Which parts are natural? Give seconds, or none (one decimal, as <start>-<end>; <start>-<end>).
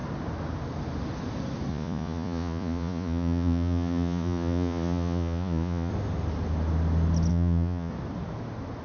0.0-1.7; 5.9-7.3; 7.9-8.8